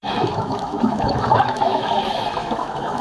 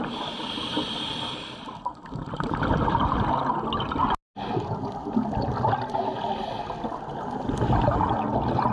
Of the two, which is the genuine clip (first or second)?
second